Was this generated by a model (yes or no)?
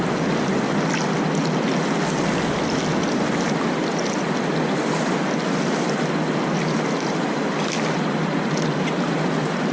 no